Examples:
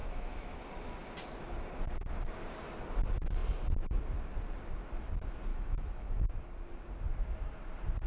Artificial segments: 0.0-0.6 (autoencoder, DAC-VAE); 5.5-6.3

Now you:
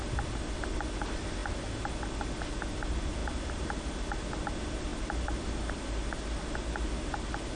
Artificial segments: none